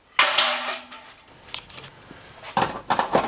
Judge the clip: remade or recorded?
recorded